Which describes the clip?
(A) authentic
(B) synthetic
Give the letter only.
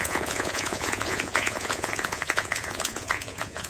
B